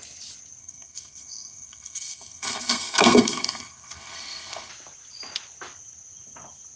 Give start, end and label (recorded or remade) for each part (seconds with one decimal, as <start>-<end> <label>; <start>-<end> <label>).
0.0-0.6 recorded; 0.6-4.7 remade; 4.7-6.8 recorded